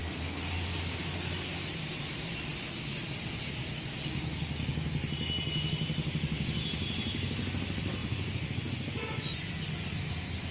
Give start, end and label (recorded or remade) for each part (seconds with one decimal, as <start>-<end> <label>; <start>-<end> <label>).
0.0-8.0 recorded; 8.0-9.5 remade; 9.5-10.5 recorded